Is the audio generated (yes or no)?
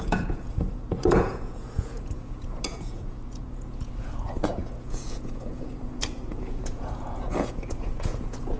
yes